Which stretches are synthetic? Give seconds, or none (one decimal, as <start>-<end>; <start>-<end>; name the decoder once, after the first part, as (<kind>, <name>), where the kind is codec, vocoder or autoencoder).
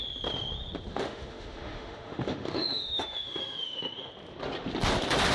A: 0.9-4.1 (autoencoder, DAC-VAE)